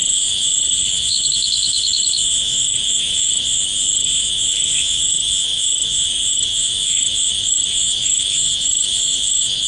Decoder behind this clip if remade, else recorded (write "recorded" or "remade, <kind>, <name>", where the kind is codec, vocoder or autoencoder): remade, autoencoder, DAC-VAE